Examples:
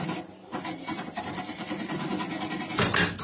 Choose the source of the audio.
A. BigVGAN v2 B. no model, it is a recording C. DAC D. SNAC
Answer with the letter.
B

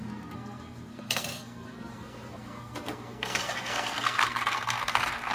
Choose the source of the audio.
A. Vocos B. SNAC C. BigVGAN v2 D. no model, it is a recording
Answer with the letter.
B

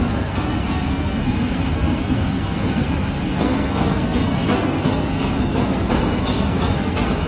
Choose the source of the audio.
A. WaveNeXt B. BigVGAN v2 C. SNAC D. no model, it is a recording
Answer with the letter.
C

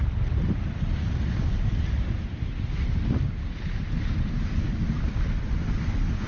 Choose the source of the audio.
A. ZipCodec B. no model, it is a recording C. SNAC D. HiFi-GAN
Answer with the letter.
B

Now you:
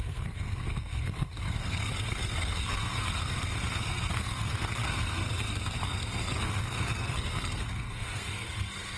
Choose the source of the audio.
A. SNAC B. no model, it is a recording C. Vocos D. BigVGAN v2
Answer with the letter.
A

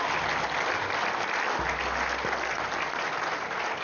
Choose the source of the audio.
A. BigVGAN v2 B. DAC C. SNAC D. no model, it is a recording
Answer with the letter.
D